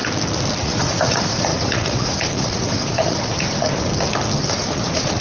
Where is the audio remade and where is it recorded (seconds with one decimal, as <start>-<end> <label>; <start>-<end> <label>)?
0.0-0.6 recorded; 0.6-3.9 remade; 3.9-4.5 recorded; 4.5-5.2 remade

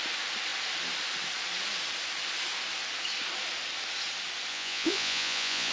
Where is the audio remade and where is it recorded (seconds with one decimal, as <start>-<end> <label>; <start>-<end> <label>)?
0.0-4.5 recorded; 4.5-5.7 remade

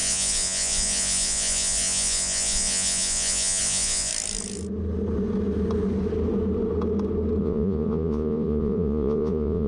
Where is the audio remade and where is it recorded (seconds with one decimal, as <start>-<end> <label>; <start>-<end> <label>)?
0.0-4.1 remade; 4.1-7.4 recorded; 7.4-9.7 remade

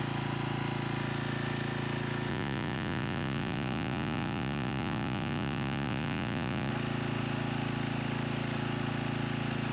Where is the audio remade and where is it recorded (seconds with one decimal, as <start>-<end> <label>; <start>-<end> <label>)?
0.0-2.3 recorded; 2.3-6.7 remade; 6.7-9.7 recorded